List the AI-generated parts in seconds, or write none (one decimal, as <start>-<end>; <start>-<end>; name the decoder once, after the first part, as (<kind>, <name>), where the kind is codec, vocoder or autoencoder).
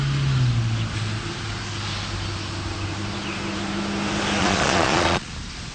4.4-5.3 (vocoder, Vocos)